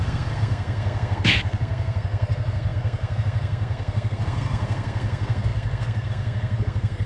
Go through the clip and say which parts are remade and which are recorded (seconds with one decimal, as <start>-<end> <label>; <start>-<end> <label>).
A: 0.0-7.1 remade